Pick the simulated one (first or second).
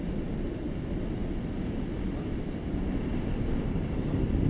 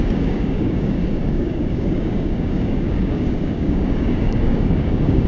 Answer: second